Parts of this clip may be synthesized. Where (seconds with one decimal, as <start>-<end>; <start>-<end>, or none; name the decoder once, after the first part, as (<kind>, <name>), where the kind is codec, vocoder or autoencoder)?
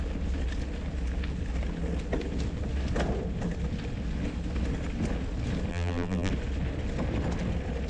5.7-6.3 (vocoder, BigVGAN v2)